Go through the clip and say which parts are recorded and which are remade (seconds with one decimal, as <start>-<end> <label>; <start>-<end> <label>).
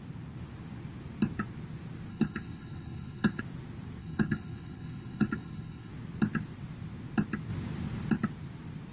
0.0-2.1 recorded; 2.1-3.4 remade; 3.4-4.0 recorded; 4.0-5.9 remade; 5.9-8.9 recorded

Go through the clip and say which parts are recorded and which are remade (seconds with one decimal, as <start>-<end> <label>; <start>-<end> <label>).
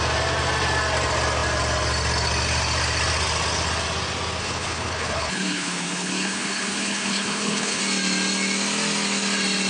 0.0-4.4 recorded; 4.4-7.8 remade; 7.8-9.7 recorded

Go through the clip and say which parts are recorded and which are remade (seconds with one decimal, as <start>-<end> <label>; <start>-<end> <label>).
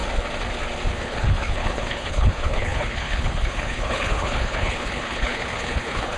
0.0-0.9 recorded; 0.9-6.2 remade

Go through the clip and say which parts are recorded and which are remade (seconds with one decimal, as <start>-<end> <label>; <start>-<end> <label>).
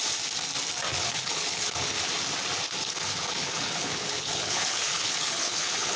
0.0-0.9 recorded; 0.9-2.1 remade; 2.1-2.8 recorded; 2.8-6.0 remade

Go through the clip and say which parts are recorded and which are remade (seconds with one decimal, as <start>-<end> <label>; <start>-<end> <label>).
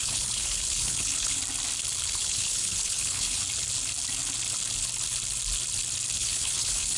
0.0-1.4 remade; 1.4-2.2 recorded; 2.2-3.4 remade; 3.4-6.2 recorded; 6.2-7.0 remade